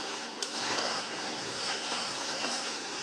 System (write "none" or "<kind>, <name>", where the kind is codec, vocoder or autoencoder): codec, SNAC